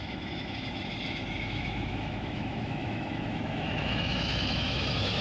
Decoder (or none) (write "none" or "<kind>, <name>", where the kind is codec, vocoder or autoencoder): autoencoder, DAC-VAE